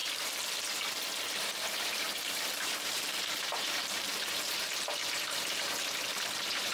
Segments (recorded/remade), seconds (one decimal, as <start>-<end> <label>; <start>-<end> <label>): 0.0-1.3 recorded; 1.3-6.7 remade